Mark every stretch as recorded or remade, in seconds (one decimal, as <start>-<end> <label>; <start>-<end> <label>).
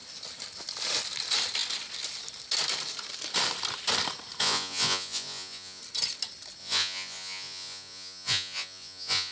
0.0-4.4 recorded; 4.4-5.8 remade; 5.8-6.6 recorded; 6.6-9.3 remade